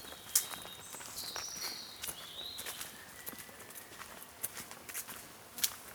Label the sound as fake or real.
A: real